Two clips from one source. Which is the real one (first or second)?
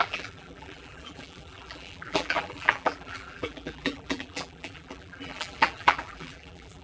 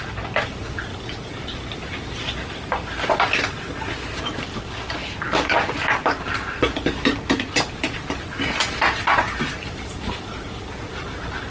second